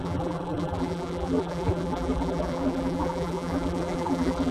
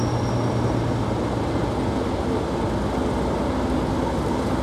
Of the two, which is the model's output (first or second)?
first